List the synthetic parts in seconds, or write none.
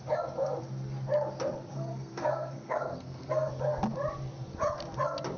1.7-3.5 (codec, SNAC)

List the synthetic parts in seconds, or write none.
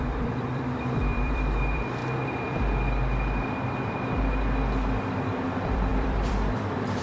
0.0-2.0 (vocoder, BigVGAN v2); 5.1-7.0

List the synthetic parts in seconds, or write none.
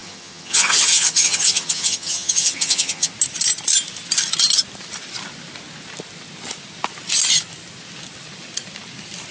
0.0-3.1 (vocoder, HiFi-GAN)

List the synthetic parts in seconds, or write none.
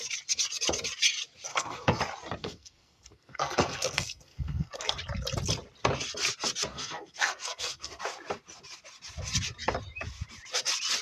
1.5-2.0 (codec, SNAC); 2.4-4.9; 6.7-8.0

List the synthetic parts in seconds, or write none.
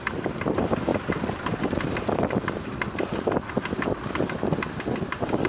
0.9-4.2 (vocoder, BigVGAN v2)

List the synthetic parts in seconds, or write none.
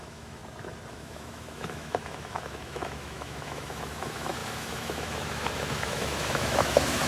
0.0-0.4 (autoencoder, DAC-VAE); 0.9-7.1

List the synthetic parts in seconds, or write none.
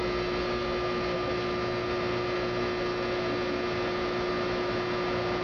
none